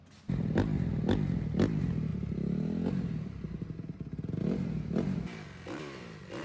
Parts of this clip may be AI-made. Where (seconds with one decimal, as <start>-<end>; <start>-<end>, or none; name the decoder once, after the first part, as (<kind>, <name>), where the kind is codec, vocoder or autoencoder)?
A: none